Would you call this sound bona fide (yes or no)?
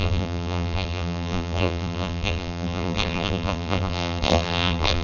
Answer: no